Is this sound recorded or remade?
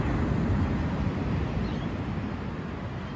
recorded